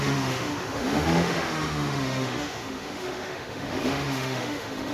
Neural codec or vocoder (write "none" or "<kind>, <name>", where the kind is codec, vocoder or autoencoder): autoencoder, DAC-VAE